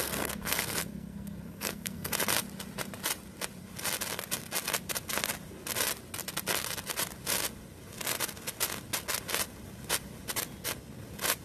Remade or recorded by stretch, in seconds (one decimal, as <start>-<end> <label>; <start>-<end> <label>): 0.0-2.1 remade; 2.1-11.4 recorded